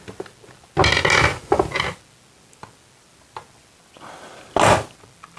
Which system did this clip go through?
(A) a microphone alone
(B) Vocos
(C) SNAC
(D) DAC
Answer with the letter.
A